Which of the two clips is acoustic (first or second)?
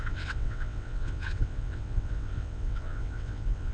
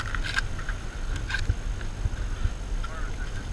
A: second